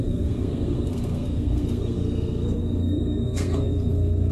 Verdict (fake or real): fake